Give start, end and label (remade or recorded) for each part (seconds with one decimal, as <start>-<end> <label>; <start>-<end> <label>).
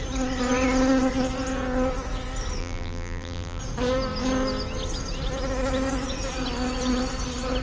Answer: 0.0-2.6 recorded; 2.6-3.6 remade; 3.6-7.6 recorded